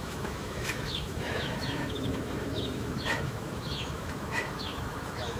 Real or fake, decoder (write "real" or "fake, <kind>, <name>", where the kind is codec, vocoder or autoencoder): fake, autoencoder, DAC-VAE